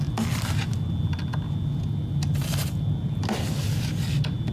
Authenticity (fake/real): real